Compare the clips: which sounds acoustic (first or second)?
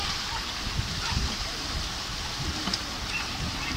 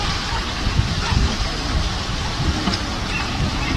first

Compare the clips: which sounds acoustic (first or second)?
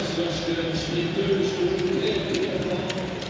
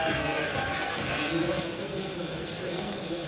first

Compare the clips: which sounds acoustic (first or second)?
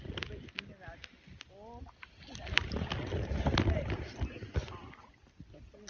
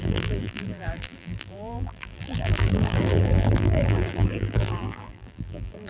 first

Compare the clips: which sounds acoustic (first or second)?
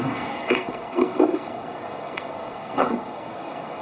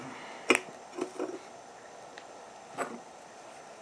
second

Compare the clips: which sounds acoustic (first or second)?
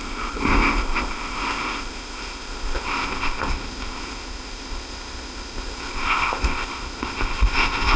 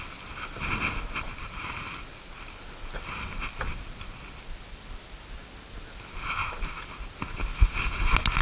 second